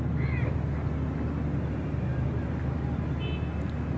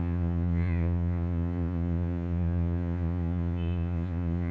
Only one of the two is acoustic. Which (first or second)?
first